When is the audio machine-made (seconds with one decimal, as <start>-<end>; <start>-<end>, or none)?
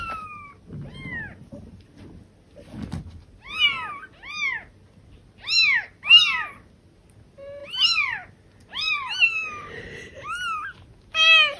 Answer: none